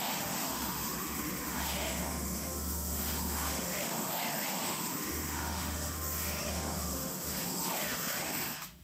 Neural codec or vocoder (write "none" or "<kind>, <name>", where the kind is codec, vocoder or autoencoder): autoencoder, DAC-VAE